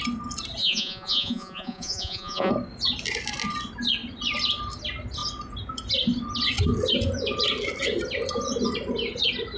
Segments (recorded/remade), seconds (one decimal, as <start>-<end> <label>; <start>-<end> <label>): 0.0-0.6 recorded; 0.6-2.5 remade; 2.5-9.6 recorded

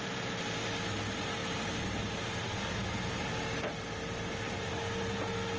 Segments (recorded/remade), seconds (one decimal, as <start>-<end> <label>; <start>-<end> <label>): 0.0-5.6 recorded

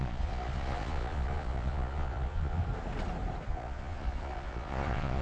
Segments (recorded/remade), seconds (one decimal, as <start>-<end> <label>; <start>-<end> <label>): 0.0-2.6 remade; 2.6-3.5 recorded; 3.5-5.2 remade